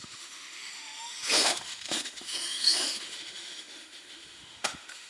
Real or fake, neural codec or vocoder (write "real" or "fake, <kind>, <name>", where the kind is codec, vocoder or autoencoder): fake, autoencoder, DAC-VAE